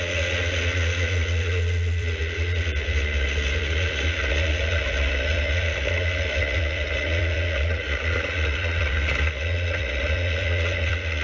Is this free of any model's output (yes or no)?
no